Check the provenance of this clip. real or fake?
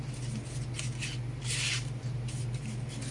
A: real